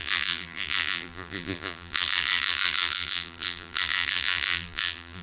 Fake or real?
fake